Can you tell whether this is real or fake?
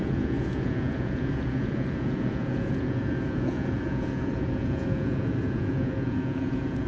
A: fake